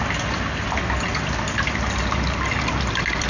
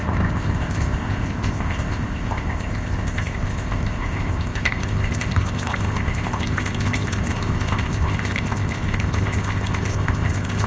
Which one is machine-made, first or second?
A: second